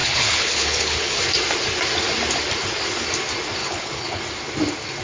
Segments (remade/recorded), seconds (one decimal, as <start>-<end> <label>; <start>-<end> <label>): 0.0-1.2 remade; 1.2-3.6 recorded; 3.6-4.2 remade; 4.2-5.0 recorded

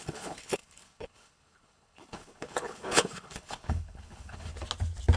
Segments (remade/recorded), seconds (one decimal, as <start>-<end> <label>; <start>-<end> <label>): 0.0-4.5 remade; 4.5-5.2 recorded